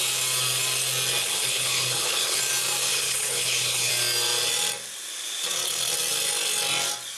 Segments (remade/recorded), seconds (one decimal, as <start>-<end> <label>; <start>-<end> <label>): 0.0-1.2 recorded; 1.2-2.4 remade; 2.4-2.9 recorded; 2.9-3.9 remade; 3.9-7.2 recorded